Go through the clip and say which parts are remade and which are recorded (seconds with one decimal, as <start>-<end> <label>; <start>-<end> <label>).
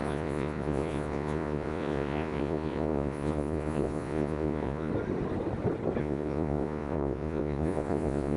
0.0-4.9 remade; 4.9-6.0 recorded; 6.0-8.4 remade